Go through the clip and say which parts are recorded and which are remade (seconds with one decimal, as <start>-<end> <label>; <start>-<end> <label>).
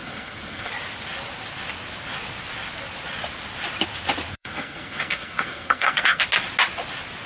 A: 0.0-0.7 remade; 0.7-4.3 recorded; 4.3-6.2 remade; 6.2-7.3 recorded